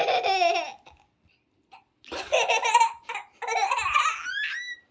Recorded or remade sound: recorded